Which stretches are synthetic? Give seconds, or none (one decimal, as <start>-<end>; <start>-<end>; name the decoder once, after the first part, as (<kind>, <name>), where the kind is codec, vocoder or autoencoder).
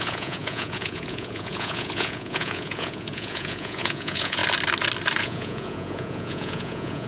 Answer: 0.0-4.4 (vocoder, Vocos); 5.2-7.1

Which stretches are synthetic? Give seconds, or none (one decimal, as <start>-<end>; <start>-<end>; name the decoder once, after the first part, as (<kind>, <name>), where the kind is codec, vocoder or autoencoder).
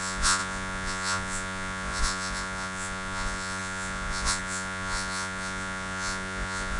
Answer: 0.0-6.8 (vocoder, Vocos)